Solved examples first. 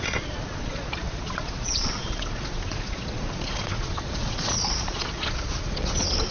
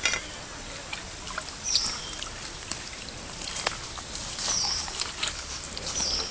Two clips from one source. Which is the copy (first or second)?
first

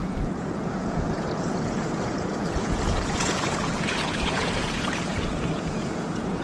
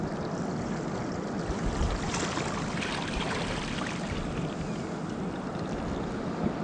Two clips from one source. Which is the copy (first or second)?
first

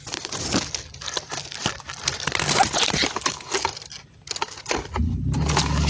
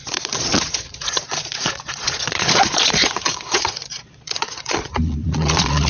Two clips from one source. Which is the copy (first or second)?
second